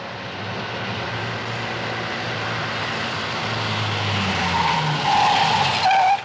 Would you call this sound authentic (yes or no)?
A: yes